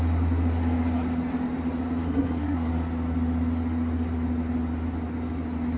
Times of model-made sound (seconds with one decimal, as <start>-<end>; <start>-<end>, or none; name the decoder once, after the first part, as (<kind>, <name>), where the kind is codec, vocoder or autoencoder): 2.0-2.7 (codec, SNAC)